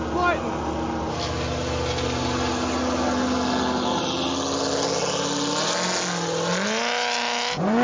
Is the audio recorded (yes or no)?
yes